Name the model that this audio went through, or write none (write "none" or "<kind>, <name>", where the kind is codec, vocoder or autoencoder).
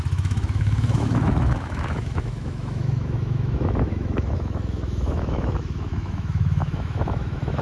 autoencoder, DAC-VAE